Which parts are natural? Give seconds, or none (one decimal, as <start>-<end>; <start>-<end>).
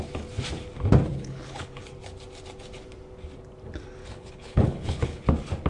0.0-1.1; 1.8-4.0; 5.2-5.7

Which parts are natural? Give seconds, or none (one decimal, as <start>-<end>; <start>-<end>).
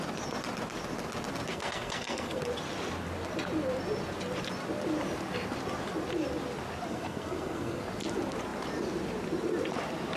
0.0-1.5; 2.4-6.9; 7.8-10.2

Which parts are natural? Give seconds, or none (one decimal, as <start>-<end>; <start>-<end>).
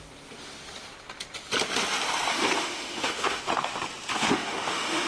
0.0-2.3; 3.4-4.1